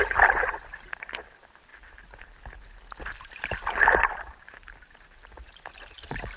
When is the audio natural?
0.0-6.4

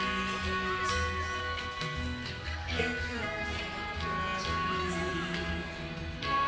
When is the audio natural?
0.0-1.4; 3.6-6.5

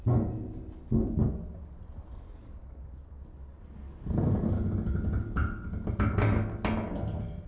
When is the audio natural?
0.0-7.5

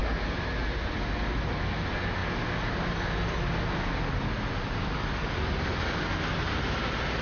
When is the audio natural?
0.0-7.2

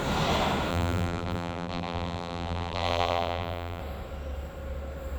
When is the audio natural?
0.0-0.7; 3.8-5.2

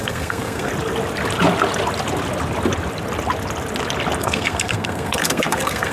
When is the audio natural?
0.7-4.2

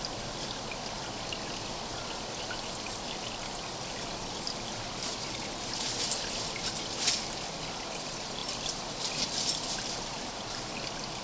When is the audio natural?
0.0-11.2

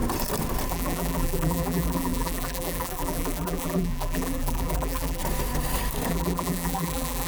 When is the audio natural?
0.0-0.7; 5.2-6.1